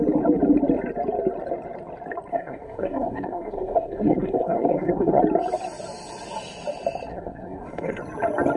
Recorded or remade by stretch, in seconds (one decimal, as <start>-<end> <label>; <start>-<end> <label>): 0.0-2.3 recorded; 2.3-5.2 remade; 5.2-7.1 recorded; 7.1-8.0 remade; 8.0-8.6 recorded